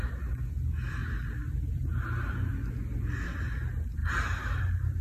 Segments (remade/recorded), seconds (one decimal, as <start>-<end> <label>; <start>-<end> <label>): 0.0-5.0 recorded